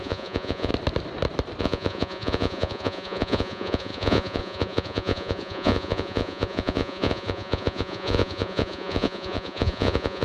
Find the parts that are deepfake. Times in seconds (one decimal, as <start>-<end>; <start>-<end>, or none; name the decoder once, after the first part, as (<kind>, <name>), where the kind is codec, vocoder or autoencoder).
0.0-0.7 (vocoder, Vocos); 1.6-10.2